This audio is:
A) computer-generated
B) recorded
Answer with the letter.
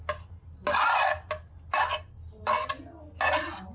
B